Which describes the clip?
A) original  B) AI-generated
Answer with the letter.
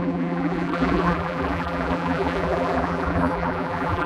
B